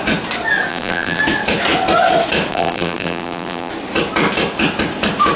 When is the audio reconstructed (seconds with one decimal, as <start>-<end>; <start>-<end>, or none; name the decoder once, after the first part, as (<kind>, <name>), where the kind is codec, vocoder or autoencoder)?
0.7-1.2 (vocoder, BigVGAN v2); 2.5-3.7